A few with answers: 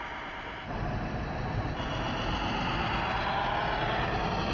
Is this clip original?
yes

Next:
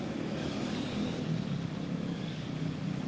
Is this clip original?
no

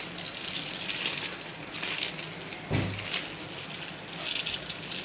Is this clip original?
yes